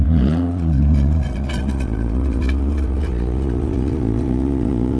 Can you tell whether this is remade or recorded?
remade